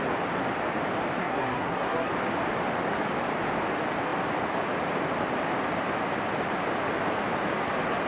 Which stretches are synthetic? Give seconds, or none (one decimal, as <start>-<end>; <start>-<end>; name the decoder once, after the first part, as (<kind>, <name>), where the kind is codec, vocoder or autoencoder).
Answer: 1.2-2.1 (codec, SNAC)

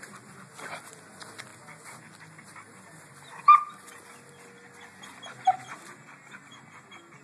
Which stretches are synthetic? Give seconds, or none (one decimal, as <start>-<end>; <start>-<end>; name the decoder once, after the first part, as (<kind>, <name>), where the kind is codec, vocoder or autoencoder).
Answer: none

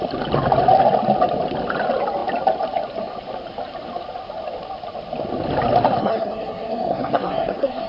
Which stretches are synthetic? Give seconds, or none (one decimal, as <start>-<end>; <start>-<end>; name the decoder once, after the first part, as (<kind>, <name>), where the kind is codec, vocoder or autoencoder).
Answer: 6.0-7.9 (codec, SNAC)

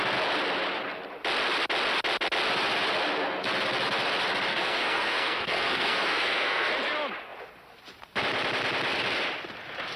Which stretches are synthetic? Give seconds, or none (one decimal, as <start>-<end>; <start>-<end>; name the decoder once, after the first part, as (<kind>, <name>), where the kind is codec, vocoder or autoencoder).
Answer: 4.5-6.7 (codec, SNAC)

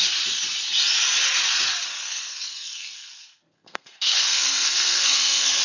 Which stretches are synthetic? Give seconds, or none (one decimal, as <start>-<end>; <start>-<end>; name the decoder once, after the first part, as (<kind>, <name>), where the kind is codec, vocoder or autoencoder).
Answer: 2.0-5.6 (codec, SNAC)

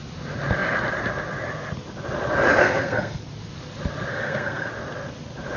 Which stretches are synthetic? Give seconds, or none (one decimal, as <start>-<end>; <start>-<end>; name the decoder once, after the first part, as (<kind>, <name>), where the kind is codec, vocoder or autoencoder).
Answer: 2.6-3.2 (codec, SNAC); 4.1-4.7